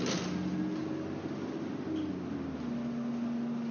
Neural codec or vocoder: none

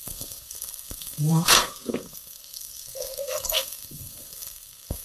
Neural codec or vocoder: codec, SNAC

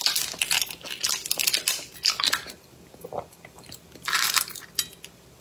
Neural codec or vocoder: none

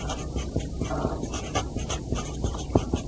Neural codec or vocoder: none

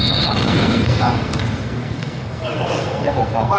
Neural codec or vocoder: codec, SNAC